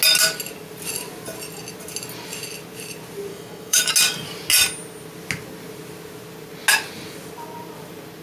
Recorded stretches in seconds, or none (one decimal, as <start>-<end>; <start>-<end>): 0.0-3.3; 3.9-8.2